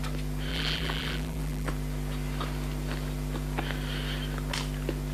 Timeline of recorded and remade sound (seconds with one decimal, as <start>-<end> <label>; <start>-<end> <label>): 0.0-0.5 recorded; 0.5-1.7 remade; 1.7-5.1 recorded

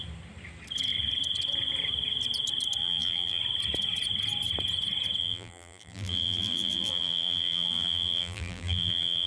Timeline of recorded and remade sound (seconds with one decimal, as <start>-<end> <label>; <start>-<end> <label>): 0.0-2.8 recorded; 2.8-3.4 remade; 3.4-5.2 recorded; 5.2-9.3 remade

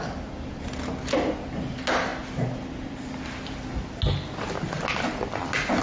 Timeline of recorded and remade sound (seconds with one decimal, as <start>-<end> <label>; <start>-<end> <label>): 0.0-5.8 recorded